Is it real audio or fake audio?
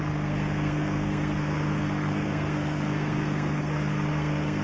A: fake